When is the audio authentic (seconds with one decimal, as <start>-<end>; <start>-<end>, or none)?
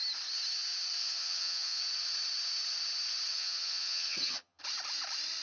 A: 0.0-1.0; 1.8-3.3; 4.6-5.4